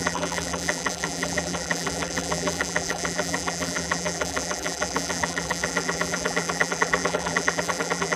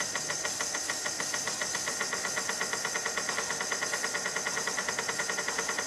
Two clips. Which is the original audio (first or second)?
second